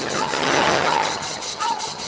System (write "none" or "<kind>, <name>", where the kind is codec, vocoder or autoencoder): vocoder, HiFi-GAN